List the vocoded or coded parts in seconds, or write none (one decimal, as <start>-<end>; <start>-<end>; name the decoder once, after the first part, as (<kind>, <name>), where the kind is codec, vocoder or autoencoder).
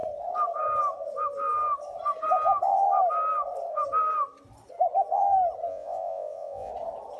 5.7-6.7 (vocoder, Vocos)